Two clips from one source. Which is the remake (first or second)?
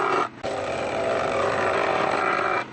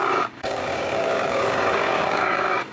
second